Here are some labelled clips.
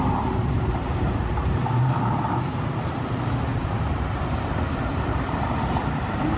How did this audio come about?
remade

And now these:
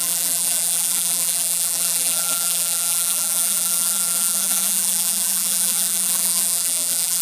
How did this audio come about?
remade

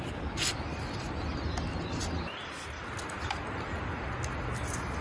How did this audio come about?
recorded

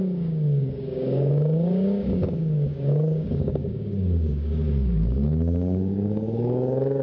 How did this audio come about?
remade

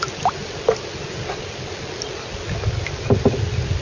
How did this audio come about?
recorded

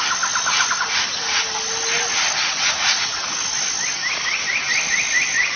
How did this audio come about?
recorded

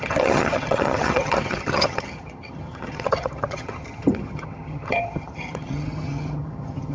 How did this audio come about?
remade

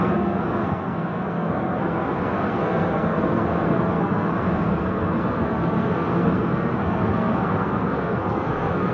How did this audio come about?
remade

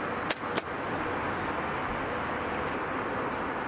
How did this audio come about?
recorded